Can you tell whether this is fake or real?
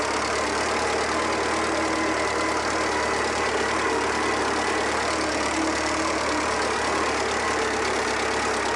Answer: real